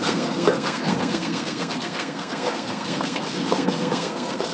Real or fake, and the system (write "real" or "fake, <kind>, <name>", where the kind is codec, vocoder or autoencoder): fake, codec, SNAC